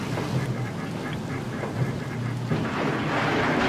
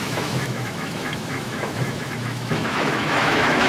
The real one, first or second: first